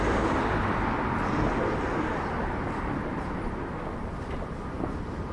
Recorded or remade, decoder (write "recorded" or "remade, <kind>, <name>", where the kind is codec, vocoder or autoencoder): remade, vocoder, BigVGAN v2